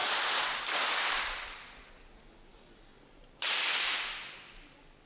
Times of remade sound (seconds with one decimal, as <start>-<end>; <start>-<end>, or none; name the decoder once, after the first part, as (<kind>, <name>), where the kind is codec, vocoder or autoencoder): 0.0-1.9 (vocoder, BigVGAN v2)